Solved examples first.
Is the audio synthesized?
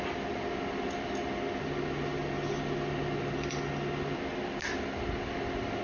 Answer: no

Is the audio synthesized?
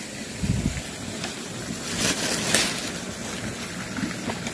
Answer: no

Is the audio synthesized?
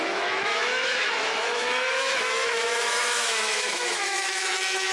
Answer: yes